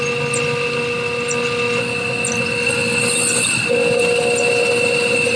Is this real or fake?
real